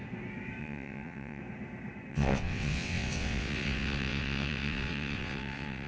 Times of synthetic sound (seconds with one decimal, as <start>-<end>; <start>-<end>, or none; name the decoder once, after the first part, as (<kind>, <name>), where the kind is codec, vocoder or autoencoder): 0.6-1.4 (vocoder, WaveNeXt); 2.1-5.9